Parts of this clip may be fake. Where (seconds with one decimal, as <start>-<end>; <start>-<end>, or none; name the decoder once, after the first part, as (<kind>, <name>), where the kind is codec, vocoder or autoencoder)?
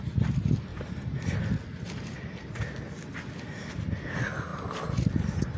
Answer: none